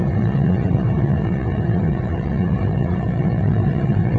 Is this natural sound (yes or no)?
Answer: no